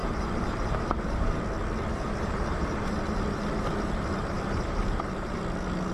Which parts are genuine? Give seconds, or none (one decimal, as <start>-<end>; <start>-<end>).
1.4-1.9; 5.4-5.9